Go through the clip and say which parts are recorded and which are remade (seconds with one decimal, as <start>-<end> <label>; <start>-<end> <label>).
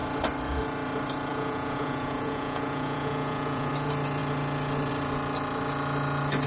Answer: 0.0-1.3 recorded; 1.3-3.7 remade; 3.7-6.5 recorded